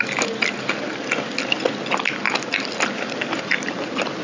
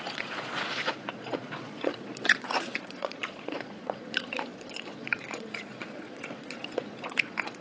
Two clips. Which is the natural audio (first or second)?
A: first